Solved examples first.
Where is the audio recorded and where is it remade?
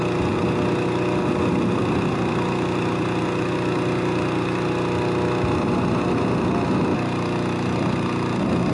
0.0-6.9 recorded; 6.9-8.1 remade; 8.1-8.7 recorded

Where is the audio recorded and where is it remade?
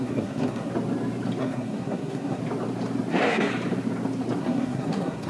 0.0-0.7 remade; 0.7-1.4 recorded; 1.4-2.4 remade; 2.4-3.1 recorded; 3.1-3.5 remade; 3.5-4.4 recorded; 4.4-5.3 remade